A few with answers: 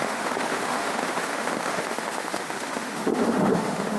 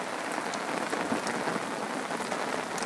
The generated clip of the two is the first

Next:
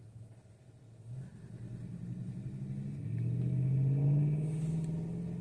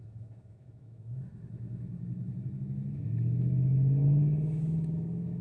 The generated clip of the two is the second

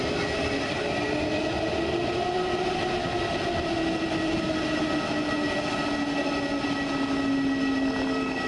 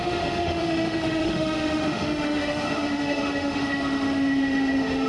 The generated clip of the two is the second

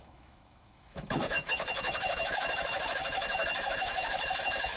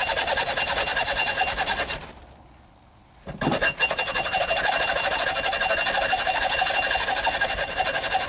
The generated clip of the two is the first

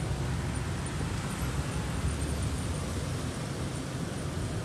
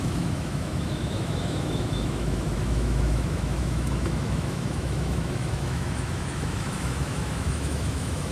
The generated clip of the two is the second